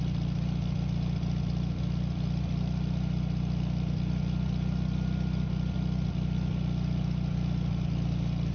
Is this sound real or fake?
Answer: real